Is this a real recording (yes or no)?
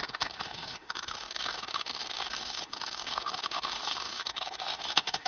no